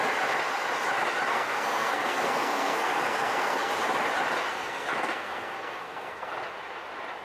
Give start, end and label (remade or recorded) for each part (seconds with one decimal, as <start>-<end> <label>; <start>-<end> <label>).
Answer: 0.0-1.3 recorded; 1.3-3.7 remade; 3.7-4.5 recorded; 4.5-6.3 remade; 6.3-7.2 recorded